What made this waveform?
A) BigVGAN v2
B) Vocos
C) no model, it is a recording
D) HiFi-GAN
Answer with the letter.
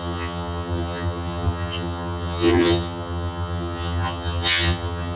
D